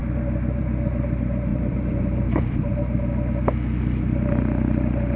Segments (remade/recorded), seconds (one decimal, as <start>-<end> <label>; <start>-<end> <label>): 0.0-1.5 recorded; 1.5-2.7 remade; 2.7-5.2 recorded